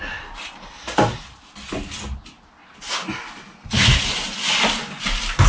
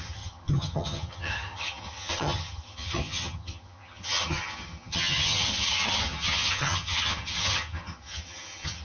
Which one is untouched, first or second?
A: first